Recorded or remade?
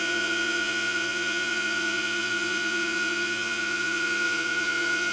remade